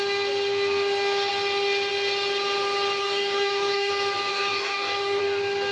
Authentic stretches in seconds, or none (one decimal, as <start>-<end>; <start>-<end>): 0.0-3.0; 3.9-4.3; 5.2-5.7